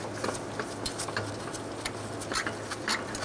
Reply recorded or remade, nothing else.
recorded